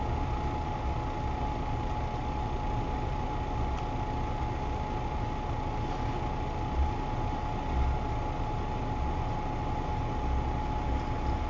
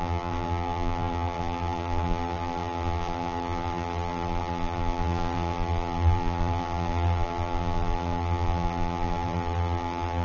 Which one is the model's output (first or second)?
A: second